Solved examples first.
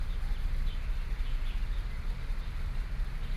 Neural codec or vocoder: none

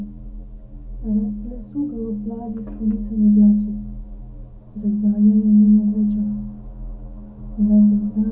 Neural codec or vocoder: none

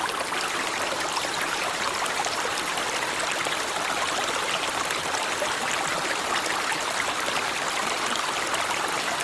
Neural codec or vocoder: none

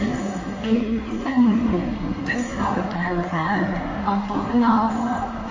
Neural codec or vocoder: codec, SNAC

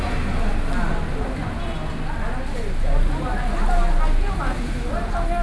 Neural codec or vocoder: none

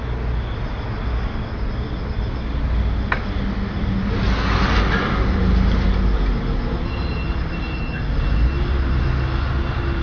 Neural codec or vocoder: none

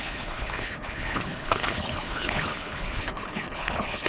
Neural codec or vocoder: codec, HILCodec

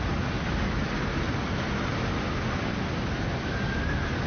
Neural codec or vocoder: none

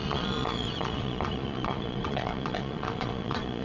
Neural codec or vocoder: vocoder, Vocos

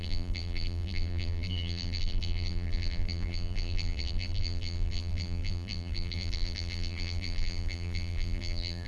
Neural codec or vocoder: vocoder, BigVGAN v2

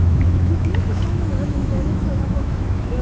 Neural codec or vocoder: autoencoder, DAC-VAE